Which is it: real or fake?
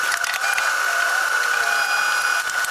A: real